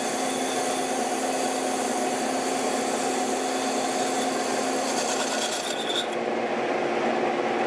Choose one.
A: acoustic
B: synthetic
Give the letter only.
A